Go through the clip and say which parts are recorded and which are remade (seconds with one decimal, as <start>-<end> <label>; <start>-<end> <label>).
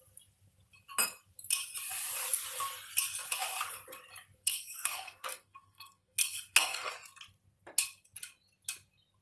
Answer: 0.0-4.4 recorded; 4.4-6.9 remade; 6.9-9.2 recorded